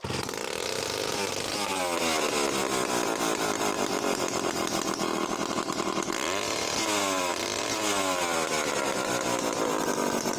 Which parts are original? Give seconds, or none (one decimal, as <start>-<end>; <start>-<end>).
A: 0.0-10.4